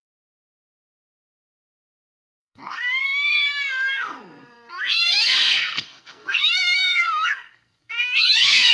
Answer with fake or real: fake